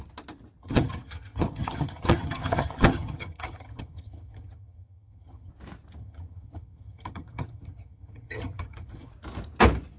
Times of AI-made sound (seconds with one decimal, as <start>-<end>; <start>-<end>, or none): 0.6-5.5; 6.0-9.1